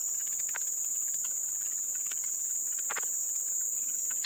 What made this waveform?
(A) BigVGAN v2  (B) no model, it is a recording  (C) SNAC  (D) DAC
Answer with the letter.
B